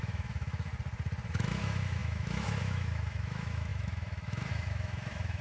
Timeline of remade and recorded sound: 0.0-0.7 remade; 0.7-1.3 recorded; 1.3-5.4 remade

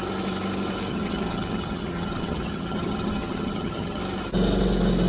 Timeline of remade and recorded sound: 0.0-0.9 recorded; 0.9-4.0 remade; 4.0-5.1 recorded

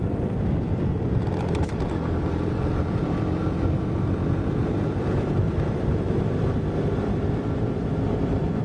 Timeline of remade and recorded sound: 0.0-8.6 remade